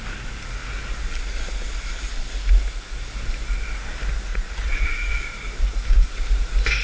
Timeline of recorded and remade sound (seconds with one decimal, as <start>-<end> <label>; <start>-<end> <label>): 0.0-4.3 recorded; 4.3-5.1 remade; 5.1-6.8 recorded

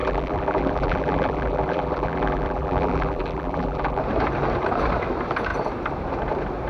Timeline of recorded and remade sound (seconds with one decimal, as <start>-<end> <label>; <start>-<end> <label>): 0.0-4.0 remade; 4.0-6.7 recorded

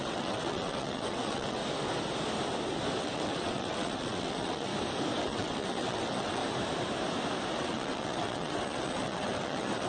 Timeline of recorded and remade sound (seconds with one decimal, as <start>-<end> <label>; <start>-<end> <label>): 0.0-1.6 remade; 1.6-3.0 recorded; 3.0-4.7 remade; 4.7-5.2 recorded; 5.2-6.4 remade; 6.4-7.5 recorded; 7.5-9.9 remade

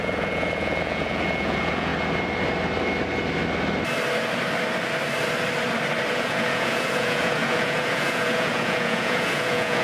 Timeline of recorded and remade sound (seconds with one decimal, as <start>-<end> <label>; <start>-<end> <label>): 0.0-1.9 remade; 1.9-6.1 recorded; 6.1-9.8 remade

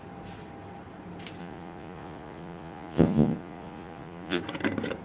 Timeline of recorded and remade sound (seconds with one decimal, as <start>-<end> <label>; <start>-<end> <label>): 0.0-1.4 recorded; 1.4-4.4 remade; 4.4-5.0 recorded